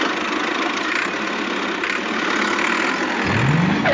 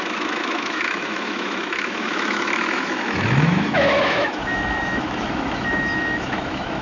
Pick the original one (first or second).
first